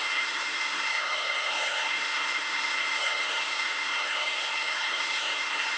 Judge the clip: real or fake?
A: fake